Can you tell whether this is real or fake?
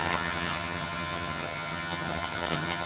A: fake